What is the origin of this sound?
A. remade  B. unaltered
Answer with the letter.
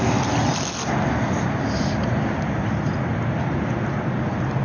B